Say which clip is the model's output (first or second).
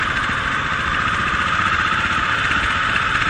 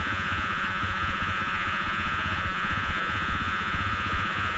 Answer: second